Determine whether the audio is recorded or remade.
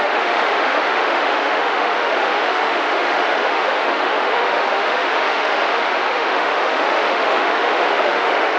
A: remade